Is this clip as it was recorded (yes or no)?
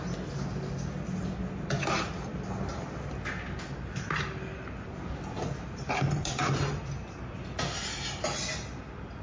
yes